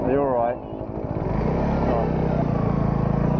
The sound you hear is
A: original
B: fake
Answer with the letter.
A